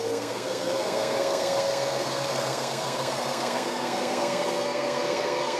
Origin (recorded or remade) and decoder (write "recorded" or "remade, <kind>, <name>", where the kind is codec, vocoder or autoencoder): remade, codec, SNAC